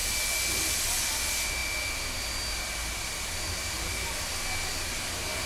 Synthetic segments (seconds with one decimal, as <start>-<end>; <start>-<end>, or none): none